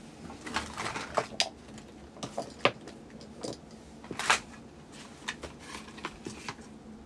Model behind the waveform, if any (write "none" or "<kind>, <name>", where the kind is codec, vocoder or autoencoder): none